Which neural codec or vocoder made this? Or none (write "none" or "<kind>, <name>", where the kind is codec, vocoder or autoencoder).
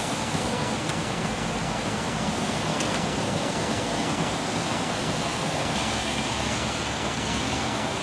codec, SNAC